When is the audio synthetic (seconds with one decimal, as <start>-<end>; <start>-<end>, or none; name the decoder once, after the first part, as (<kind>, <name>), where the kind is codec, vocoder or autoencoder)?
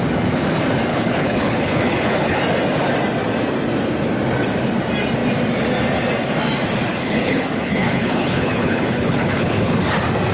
0.9-2.4 (codec, HILCodec); 6.9-9.8